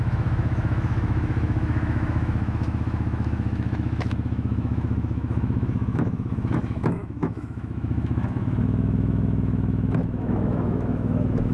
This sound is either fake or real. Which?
fake